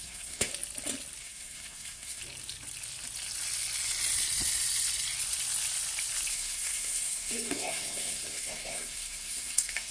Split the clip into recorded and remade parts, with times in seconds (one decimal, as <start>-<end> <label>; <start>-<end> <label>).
0.0-0.5 remade; 0.5-1.2 recorded; 1.2-2.2 remade; 2.2-6.3 recorded; 6.3-9.9 remade